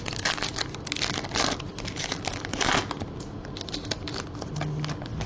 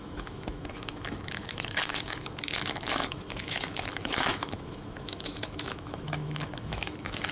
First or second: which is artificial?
second